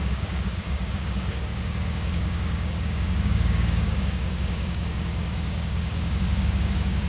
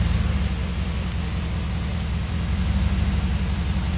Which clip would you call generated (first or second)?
first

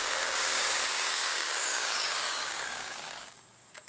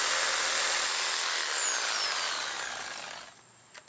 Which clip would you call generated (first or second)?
first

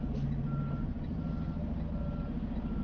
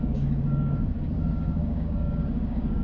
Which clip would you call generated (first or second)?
second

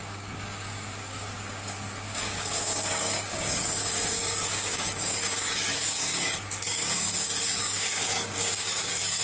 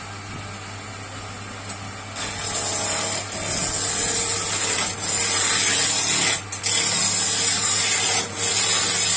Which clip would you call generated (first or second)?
first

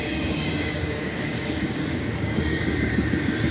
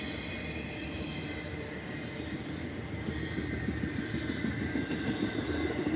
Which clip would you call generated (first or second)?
first